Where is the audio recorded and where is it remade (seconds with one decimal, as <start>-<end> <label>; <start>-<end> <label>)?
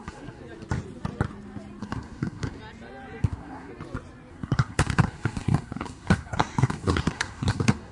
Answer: 0.0-0.4 remade; 0.4-1.8 recorded; 1.8-2.6 remade; 2.6-3.2 recorded; 3.2-3.7 remade; 3.7-4.3 recorded; 4.3-7.9 remade